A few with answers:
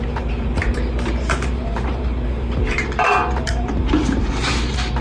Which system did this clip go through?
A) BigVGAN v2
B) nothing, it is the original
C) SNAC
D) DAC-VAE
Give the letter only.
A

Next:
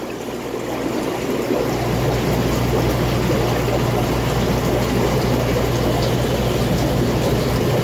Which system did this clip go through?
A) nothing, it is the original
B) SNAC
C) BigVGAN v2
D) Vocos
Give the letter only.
A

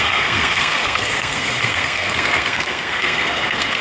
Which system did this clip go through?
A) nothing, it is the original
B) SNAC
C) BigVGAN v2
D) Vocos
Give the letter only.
B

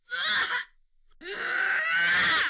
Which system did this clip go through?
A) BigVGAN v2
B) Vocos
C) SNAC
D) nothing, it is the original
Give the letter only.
D